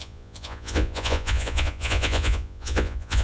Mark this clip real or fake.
fake